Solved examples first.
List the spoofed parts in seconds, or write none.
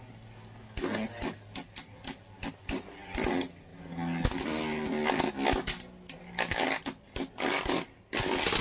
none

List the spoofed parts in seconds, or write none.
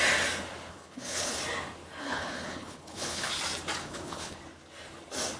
0.7-1.4; 2.0-3.3; 3.8-4.4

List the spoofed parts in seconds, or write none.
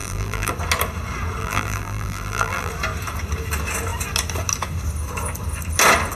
0.0-0.5; 1.4-2.7